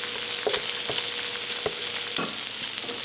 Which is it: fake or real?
real